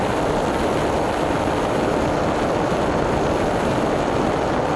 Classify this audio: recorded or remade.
recorded